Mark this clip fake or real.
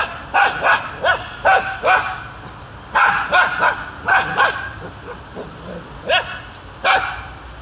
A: real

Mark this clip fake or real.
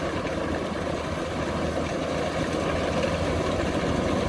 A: real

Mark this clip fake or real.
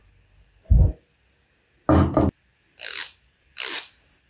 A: real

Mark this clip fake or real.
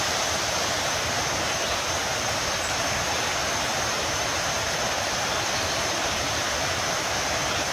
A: fake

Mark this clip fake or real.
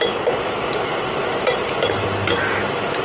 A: real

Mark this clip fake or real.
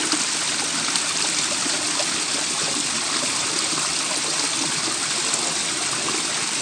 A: real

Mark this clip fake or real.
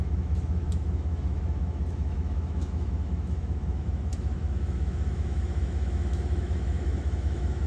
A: fake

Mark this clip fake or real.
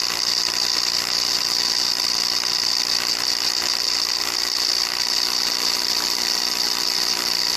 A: real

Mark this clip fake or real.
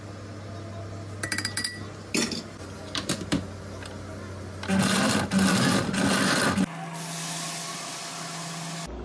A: real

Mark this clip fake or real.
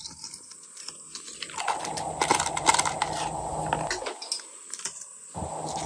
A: real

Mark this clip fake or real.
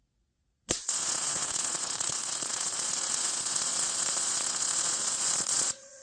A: fake